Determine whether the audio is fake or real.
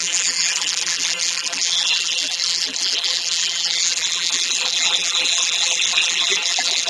fake